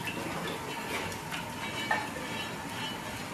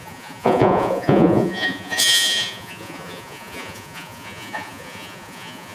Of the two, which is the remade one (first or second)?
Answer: second